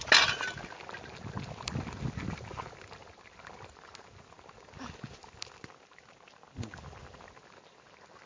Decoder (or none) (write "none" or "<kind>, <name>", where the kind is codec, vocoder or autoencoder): none